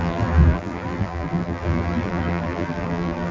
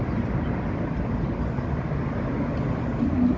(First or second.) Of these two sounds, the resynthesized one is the first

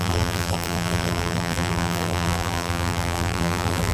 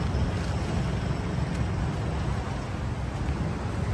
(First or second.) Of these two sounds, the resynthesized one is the first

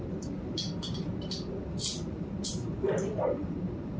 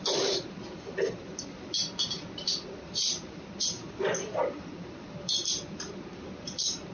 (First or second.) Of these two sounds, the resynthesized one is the second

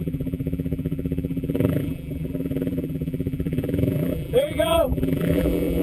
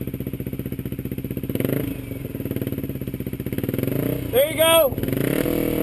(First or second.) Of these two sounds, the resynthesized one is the first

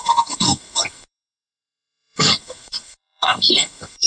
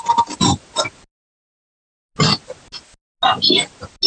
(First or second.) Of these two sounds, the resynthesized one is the first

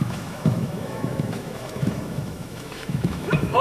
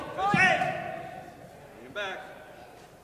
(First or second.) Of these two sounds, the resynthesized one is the first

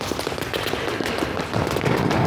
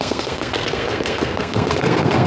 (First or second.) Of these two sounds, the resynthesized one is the second